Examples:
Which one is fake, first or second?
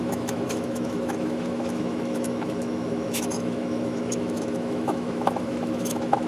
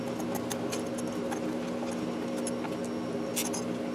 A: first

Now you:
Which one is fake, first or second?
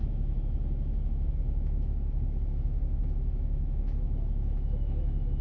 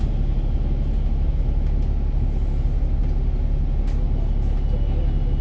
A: first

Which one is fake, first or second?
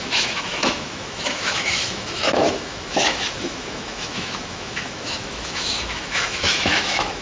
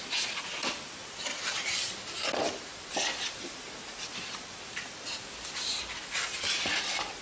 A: first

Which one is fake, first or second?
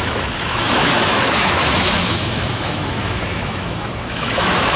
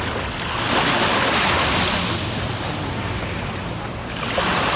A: first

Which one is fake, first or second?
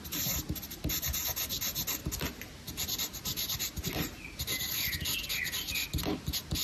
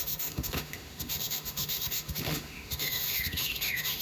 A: second